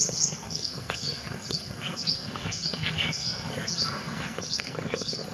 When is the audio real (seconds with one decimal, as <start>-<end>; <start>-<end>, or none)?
none